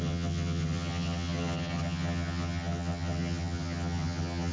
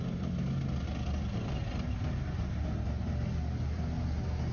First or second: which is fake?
first